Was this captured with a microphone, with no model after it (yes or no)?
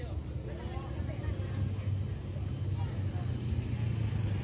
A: yes